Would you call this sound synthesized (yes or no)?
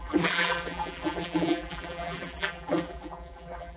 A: yes